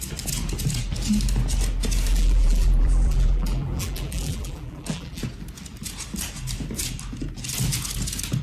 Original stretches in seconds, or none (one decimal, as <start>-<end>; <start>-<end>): 0.0-2.1; 5.2-8.4